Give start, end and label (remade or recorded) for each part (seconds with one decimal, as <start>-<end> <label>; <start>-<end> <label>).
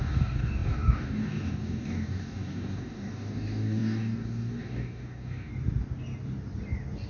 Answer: 0.0-5.5 remade; 5.5-7.1 recorded